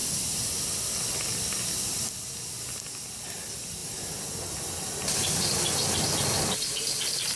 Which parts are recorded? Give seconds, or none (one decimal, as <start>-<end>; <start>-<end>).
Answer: 0.0-7.4